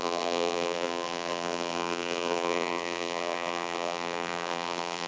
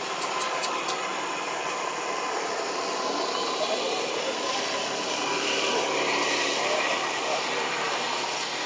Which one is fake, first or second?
first